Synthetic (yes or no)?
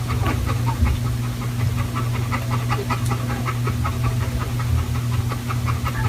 no